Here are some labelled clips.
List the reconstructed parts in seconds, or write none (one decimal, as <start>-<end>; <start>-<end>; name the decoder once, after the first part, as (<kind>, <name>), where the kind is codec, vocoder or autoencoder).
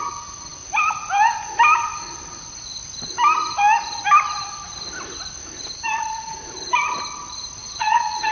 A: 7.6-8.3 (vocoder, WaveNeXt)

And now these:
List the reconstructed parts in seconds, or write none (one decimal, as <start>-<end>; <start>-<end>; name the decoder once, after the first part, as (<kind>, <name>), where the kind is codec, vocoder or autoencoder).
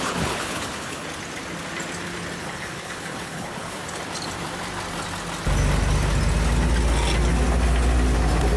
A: 0.0-1.1 (codec, HILCodec); 2.4-3.8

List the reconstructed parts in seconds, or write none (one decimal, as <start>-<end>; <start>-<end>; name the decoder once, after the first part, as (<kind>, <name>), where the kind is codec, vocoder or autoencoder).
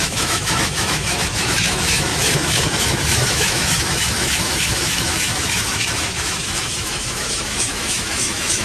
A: 0.0-8.6 (autoencoder, DAC-VAE)